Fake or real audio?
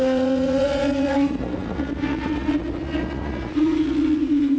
fake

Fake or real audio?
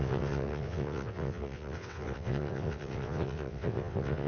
fake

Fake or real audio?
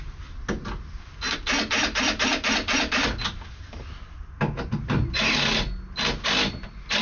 real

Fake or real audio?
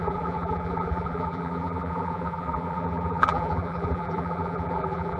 fake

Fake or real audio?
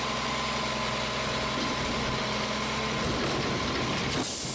real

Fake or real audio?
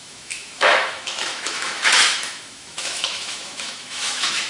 fake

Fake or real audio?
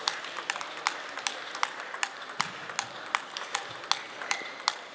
real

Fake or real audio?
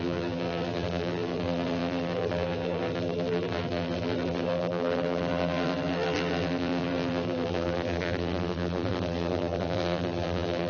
fake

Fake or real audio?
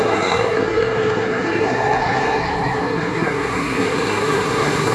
fake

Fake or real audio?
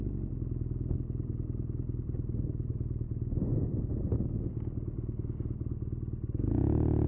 real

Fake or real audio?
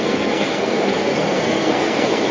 fake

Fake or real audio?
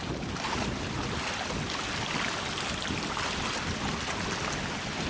real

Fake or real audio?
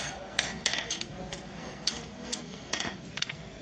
fake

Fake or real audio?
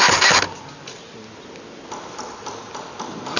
real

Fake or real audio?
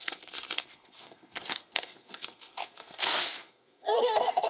fake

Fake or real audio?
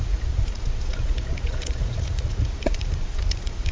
fake